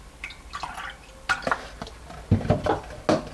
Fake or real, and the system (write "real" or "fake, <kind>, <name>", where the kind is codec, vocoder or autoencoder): real